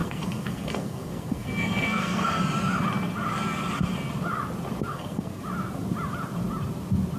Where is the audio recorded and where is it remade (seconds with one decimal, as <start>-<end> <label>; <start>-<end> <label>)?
0.0-2.4 remade; 2.4-4.9 recorded; 4.9-5.4 remade; 5.4-7.2 recorded